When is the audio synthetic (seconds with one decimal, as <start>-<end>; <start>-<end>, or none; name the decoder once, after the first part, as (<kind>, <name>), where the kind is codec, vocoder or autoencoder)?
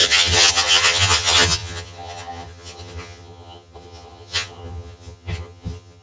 0.0-6.0 (vocoder, HiFi-GAN)